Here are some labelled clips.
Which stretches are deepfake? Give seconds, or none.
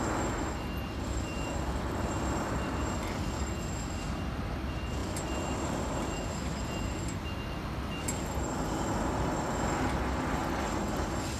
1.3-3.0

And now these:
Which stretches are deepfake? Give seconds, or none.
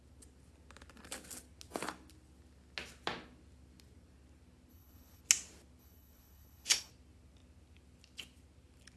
4.7-5.2; 5.8-6.9